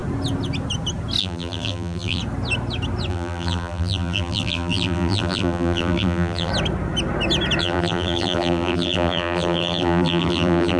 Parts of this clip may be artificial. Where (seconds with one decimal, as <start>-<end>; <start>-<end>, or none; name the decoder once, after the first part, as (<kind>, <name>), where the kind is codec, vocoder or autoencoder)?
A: 1.2-2.2 (vocoder, BigVGAN v2); 3.1-6.5; 7.6-10.8